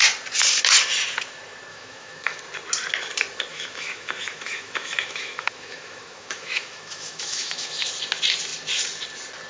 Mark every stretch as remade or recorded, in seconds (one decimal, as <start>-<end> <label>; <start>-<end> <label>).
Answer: 0.0-1.7 recorded; 1.7-2.4 remade; 2.4-3.5 recorded; 3.5-7.9 remade; 7.9-9.5 recorded